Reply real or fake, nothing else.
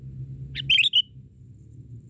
real